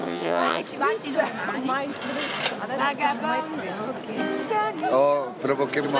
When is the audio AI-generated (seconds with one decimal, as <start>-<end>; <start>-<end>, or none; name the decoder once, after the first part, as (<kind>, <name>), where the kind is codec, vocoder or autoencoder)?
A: 0.0-0.6 (vocoder, HiFi-GAN)